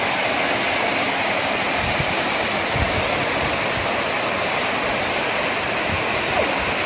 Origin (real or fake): real